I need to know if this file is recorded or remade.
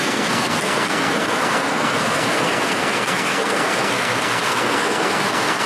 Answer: remade